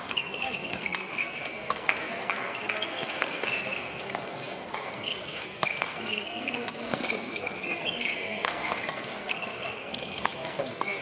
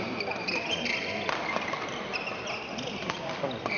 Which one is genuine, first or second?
second